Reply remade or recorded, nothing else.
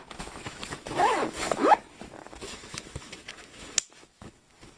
remade